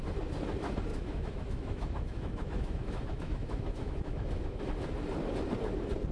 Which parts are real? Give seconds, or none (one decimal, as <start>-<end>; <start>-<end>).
0.0-0.9; 4.6-6.1